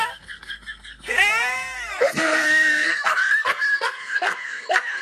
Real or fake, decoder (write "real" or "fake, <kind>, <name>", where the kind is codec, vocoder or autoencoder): fake, codec, SNAC